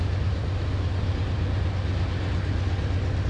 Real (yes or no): yes